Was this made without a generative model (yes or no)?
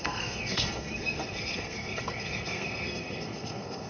no